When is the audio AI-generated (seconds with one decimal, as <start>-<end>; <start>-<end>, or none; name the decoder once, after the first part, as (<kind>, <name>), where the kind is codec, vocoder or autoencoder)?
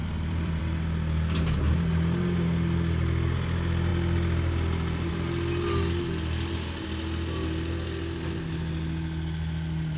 0.0-0.6 (vocoder, BigVGAN v2)